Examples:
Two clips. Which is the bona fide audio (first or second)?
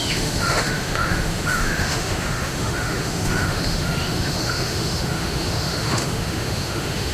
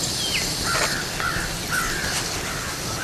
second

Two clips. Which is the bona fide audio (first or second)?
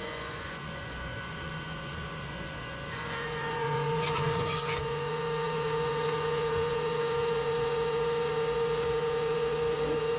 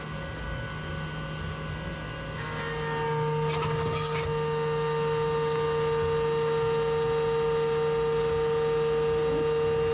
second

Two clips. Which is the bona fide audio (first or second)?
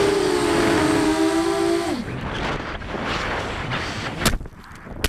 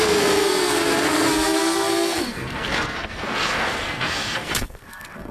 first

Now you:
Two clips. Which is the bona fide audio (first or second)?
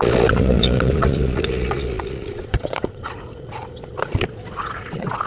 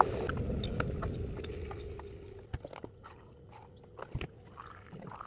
second